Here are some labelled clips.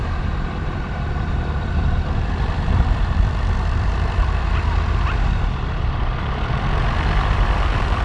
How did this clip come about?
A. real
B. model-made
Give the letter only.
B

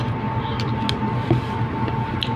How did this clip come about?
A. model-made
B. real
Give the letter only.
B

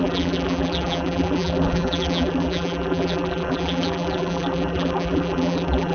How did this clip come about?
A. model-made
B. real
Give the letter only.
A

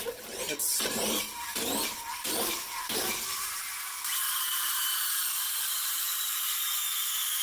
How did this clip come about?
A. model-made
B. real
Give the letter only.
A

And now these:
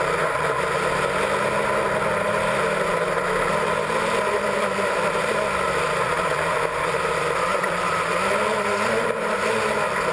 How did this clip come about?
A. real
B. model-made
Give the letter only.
A